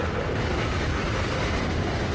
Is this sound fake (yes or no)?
no